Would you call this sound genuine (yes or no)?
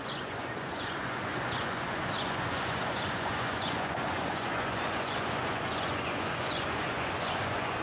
no